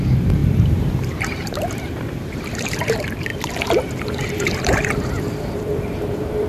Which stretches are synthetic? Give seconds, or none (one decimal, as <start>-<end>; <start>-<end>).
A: 0.0-6.5